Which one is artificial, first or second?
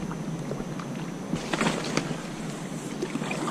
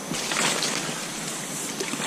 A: second